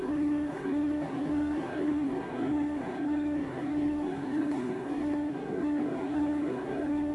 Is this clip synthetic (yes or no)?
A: yes